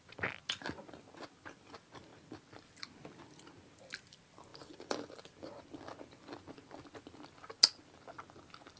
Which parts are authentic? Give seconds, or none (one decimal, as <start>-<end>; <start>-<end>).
0.0-4.5; 5.2-8.8

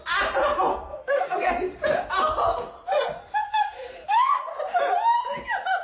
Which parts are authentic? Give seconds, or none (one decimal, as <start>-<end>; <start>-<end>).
0.0-0.7; 1.5-3.2; 4.5-5.8